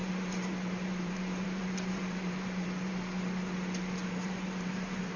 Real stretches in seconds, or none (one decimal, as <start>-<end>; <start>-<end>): 2.9-4.0